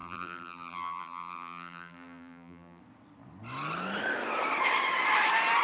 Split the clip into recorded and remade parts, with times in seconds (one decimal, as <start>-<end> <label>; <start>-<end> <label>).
0.0-2.8 remade; 2.8-5.6 recorded